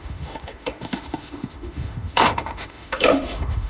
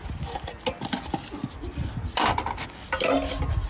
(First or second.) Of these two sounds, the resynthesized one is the first